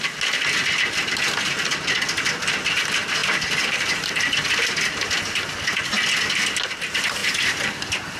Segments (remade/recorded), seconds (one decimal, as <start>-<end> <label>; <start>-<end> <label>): 0.0-3.2 recorded; 3.2-4.1 remade; 4.1-8.2 recorded